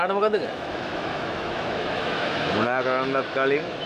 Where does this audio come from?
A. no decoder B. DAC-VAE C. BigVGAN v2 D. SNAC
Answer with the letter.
B